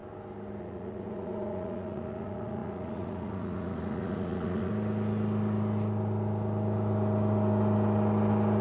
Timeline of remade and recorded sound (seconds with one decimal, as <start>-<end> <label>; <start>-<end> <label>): 0.0-0.6 recorded; 0.6-4.7 remade; 4.7-8.6 recorded